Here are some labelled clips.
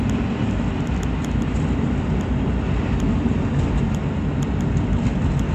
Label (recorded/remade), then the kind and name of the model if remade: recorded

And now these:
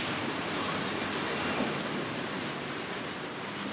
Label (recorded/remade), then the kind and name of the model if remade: recorded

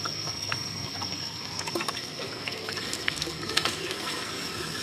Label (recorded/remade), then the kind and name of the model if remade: remade, codec, SNAC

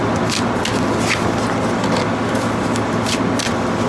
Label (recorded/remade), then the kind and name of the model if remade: recorded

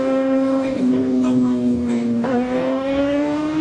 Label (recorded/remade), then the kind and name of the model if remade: remade, codec, DAC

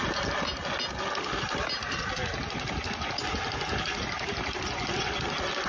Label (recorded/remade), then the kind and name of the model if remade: recorded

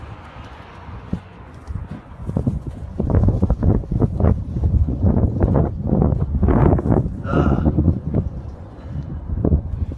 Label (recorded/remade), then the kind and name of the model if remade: remade, vocoder, Vocos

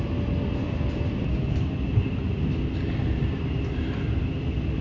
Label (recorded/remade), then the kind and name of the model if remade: recorded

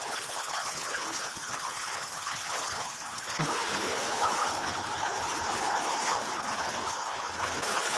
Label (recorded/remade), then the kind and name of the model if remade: remade, codec, HILCodec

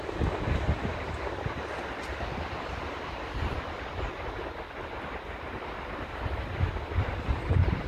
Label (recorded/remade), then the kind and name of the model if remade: recorded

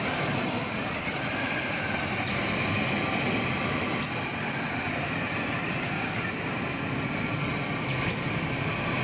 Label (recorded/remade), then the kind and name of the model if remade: remade, vocoder, BigVGAN v2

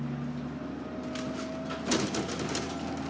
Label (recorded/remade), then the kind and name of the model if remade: recorded